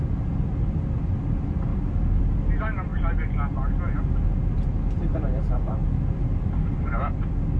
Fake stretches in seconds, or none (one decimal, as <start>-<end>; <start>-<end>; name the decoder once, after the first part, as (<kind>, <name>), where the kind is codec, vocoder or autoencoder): 1.7-2.4 (vocoder, BigVGAN v2); 5.8-6.7